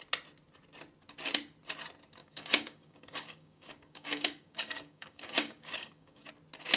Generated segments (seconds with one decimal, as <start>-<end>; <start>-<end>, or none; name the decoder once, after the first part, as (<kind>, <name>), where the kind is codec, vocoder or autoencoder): 2.2-6.3 (codec, DAC)